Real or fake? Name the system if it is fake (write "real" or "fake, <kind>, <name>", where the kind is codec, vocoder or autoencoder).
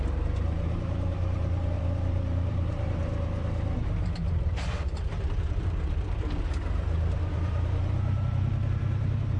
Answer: fake, vocoder, BigVGAN v2